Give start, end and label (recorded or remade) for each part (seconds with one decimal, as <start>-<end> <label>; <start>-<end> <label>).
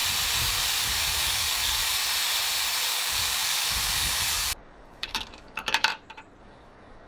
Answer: 0.0-0.5 recorded; 0.5-2.0 remade; 2.0-2.9 recorded; 2.9-5.9 remade; 5.9-6.4 recorded; 6.4-7.1 remade